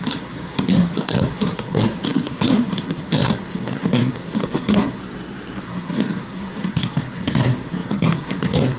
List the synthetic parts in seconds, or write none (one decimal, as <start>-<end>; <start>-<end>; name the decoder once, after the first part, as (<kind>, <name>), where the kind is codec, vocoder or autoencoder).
0.0-5.0 (codec, SNAC); 5.6-8.8